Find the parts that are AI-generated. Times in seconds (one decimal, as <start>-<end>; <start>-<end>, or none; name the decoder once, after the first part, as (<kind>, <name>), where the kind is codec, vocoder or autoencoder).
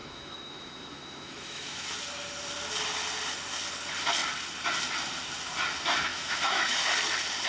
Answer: 0.0-1.9 (autoencoder, DAC-VAE); 6.1-6.8